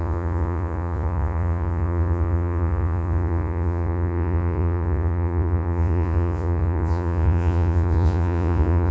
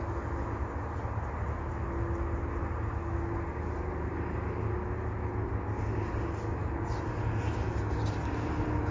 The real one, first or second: second